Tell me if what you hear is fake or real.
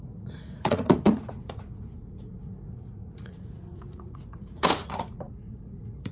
fake